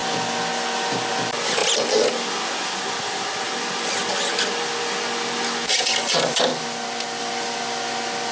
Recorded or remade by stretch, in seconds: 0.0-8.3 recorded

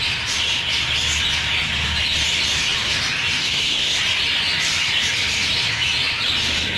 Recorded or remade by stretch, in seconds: 0.0-3.4 recorded; 3.4-4.0 remade; 4.0-6.8 recorded

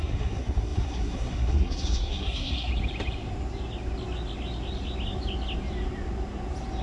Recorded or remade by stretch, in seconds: 0.0-2.7 remade; 2.7-6.8 recorded

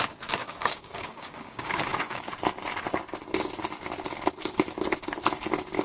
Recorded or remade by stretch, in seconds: 0.0-0.4 recorded; 0.4-2.3 remade; 2.3-5.8 recorded

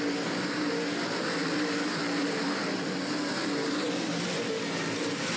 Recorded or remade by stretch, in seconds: 0.0-5.4 remade